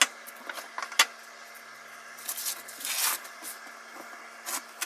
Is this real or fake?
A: real